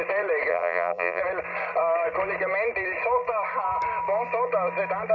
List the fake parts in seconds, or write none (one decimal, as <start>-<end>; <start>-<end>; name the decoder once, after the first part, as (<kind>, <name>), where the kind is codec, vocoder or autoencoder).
0.5-1.2 (vocoder, BigVGAN v2)